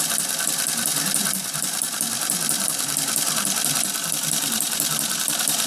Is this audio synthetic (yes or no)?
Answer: no